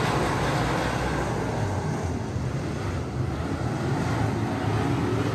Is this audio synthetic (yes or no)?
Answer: no